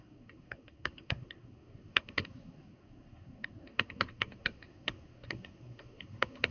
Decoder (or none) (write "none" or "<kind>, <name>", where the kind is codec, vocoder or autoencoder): codec, SNAC